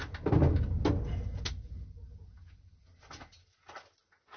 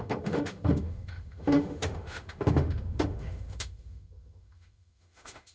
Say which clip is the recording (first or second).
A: first